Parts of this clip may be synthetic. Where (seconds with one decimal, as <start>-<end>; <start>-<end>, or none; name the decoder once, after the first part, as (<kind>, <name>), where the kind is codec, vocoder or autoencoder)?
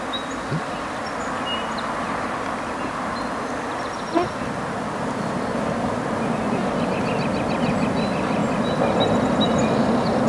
none